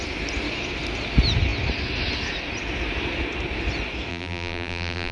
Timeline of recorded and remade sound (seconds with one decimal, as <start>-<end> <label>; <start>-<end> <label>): 0.0-4.1 recorded; 4.1-5.1 remade

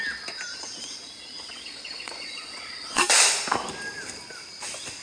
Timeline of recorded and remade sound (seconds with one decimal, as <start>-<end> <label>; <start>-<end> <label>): 0.0-0.5 recorded; 0.5-3.0 remade; 3.0-5.0 recorded

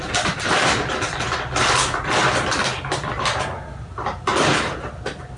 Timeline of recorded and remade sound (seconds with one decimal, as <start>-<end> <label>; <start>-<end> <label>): 0.0-5.4 recorded

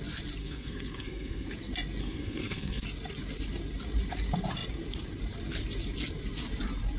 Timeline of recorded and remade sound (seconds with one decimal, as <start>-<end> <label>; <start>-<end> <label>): 0.0-0.4 recorded; 0.4-1.5 remade; 1.5-2.0 recorded; 2.0-2.8 remade; 2.8-7.0 recorded

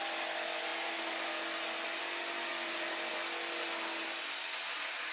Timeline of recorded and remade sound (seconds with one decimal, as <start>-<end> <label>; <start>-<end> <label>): 0.0-5.1 recorded